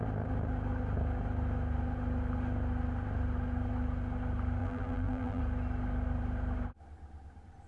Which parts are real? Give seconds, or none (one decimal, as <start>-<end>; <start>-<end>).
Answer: 0.0-4.6; 5.4-7.7